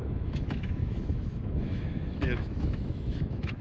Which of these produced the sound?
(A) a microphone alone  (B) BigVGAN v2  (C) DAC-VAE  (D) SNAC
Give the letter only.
C